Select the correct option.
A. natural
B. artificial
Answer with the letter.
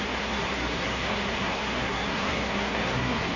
B